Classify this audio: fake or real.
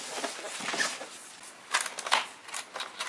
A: real